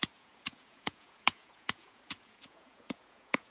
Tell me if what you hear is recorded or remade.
remade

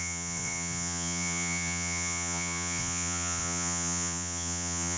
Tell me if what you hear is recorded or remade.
remade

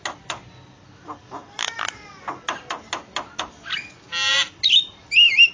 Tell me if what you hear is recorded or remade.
recorded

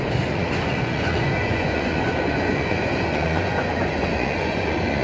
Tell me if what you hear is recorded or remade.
remade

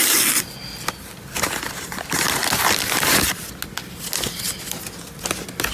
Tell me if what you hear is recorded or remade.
recorded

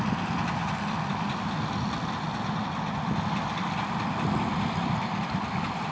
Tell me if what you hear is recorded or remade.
recorded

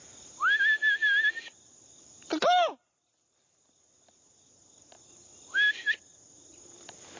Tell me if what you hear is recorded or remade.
recorded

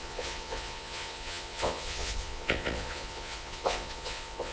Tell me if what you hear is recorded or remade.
remade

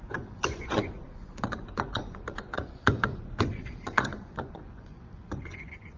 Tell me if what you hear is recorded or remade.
remade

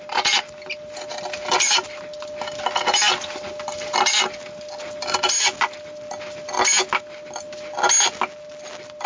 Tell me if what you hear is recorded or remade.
recorded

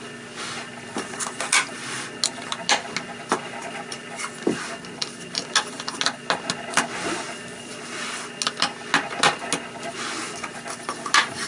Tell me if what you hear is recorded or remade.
recorded